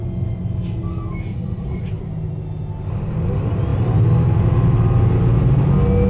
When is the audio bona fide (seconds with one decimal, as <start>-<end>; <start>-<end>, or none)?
0.0-1.3; 1.9-6.1